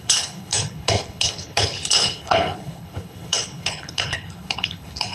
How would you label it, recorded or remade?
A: remade